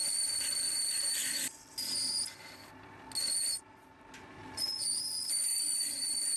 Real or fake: real